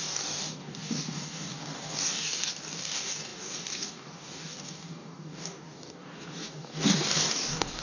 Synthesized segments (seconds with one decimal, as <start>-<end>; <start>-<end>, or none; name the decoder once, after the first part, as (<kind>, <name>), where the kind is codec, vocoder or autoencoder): 0.0-7.8 (codec, DAC)